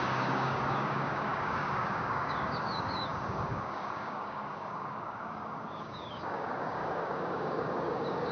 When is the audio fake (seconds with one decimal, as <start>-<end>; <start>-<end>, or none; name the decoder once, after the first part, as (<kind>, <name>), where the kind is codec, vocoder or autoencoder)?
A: 0.0-8.3 (codec, DAC)